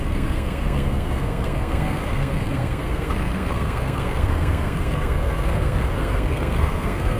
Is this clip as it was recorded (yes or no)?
no